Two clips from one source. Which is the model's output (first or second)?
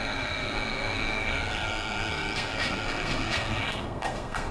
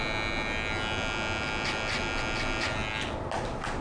first